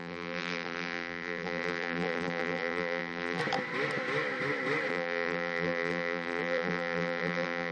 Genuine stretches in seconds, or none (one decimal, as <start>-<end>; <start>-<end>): 3.4-4.9